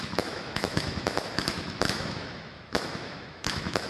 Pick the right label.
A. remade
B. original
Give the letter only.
A